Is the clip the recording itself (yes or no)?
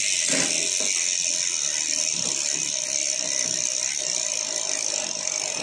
yes